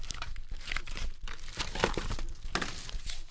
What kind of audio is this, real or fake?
real